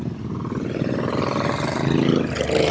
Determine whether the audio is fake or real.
real